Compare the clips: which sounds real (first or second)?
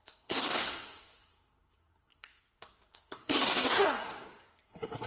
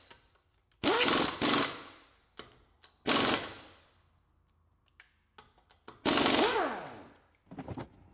second